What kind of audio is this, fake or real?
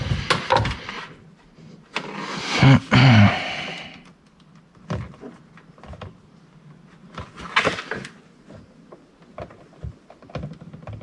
real